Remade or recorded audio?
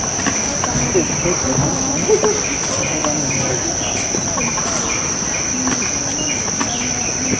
recorded